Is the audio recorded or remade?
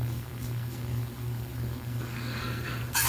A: remade